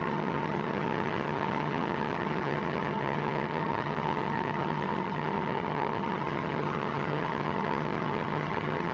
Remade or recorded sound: remade